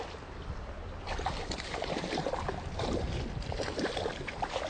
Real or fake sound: fake